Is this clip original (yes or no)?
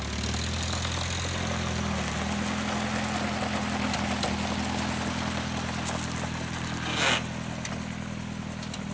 yes